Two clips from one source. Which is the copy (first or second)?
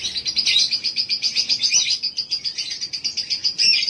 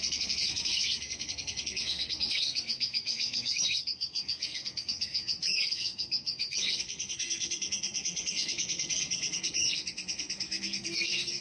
second